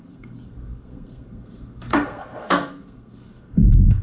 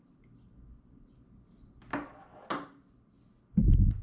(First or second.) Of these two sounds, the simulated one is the first